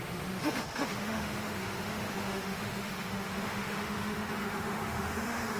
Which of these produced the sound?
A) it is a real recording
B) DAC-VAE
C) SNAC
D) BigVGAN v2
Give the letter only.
B